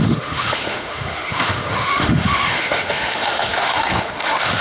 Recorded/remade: remade